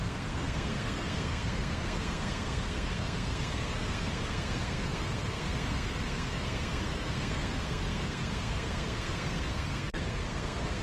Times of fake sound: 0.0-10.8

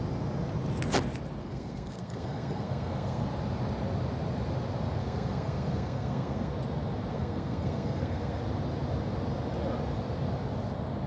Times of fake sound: 1.4-3.2; 5.0-6.5; 7.1-8.4

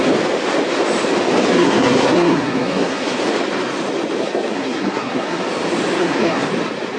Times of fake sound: 1.5-3.2; 4.2-5.4; 6.0-6.5

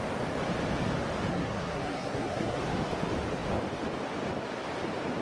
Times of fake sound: 1.3-2.6

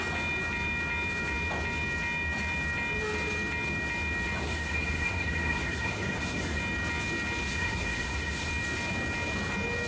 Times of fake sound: 4.4-6.6; 7.5-8.5

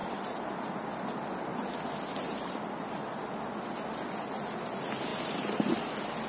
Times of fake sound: 0.0-0.6; 5.1-5.8

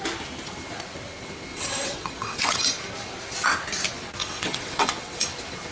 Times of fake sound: 1.5-2.6; 4.2-5.2

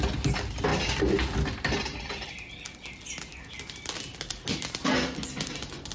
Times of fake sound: none